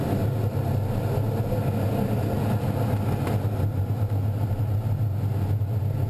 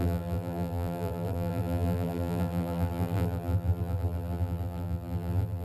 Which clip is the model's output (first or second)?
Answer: second